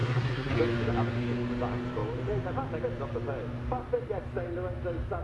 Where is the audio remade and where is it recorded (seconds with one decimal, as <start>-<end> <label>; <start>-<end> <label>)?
0.0-0.5 remade; 0.5-5.2 recorded